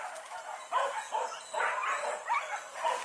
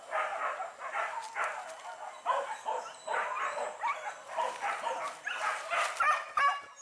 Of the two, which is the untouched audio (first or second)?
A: second